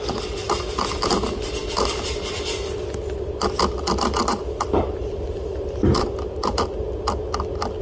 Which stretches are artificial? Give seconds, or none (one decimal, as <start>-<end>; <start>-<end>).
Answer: none